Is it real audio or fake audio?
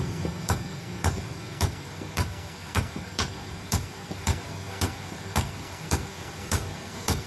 fake